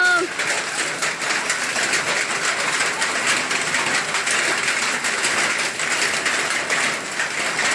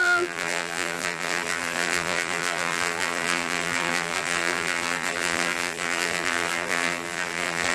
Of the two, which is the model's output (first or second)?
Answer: second